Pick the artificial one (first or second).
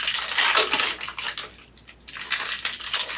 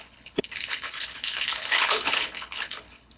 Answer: second